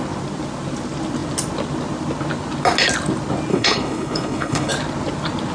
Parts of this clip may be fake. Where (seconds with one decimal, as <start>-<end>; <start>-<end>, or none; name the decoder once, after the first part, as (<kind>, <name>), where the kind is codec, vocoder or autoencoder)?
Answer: 3.5-4.7 (codec, HILCodec)